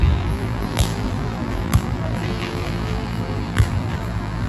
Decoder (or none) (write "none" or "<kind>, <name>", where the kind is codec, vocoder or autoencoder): vocoder, BigVGAN v2